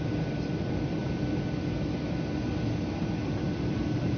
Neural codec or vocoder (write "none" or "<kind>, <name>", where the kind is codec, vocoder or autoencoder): none